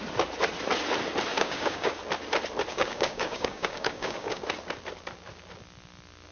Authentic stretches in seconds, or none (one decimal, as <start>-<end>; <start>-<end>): 0.0-1.3; 1.9-2.7; 4.4-6.3